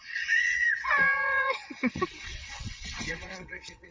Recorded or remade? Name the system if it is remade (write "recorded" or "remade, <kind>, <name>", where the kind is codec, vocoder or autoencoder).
remade, vocoder, WaveNeXt